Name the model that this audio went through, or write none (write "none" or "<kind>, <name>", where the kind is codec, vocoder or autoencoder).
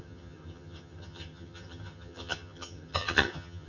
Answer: vocoder, HiFi-GAN